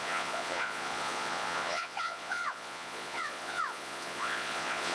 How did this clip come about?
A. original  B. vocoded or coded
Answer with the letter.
B